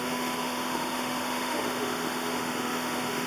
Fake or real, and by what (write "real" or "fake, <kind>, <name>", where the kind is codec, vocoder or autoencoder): fake, autoencoder, DAC-VAE